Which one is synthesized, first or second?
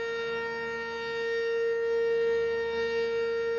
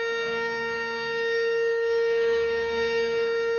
second